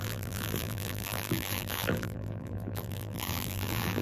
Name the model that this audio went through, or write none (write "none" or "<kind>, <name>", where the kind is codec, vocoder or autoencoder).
vocoder, BigVGAN v2